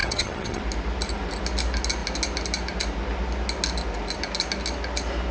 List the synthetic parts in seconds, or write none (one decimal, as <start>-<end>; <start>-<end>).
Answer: 0.0-0.6